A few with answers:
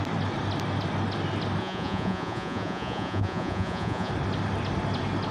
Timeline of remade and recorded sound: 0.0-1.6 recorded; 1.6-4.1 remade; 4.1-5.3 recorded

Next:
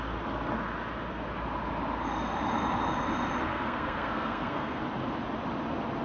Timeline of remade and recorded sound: 0.0-3.5 recorded; 3.5-4.8 remade; 4.8-6.0 recorded

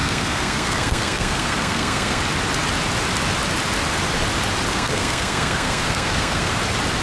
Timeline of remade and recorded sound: 0.0-2.2 remade; 2.2-4.7 recorded; 4.7-6.5 remade; 6.5-7.0 recorded

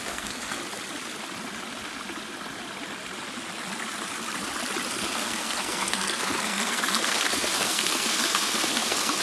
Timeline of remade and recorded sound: 0.0-0.6 remade; 0.6-4.9 recorded; 4.9-9.2 remade